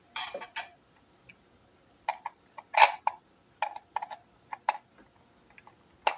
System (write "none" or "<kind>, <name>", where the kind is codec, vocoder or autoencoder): none